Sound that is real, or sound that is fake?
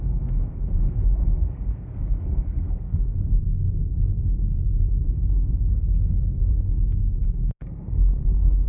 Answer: fake